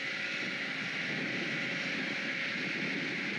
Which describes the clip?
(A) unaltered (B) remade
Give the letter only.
A